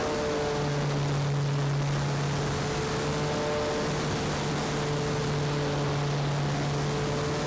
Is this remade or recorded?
recorded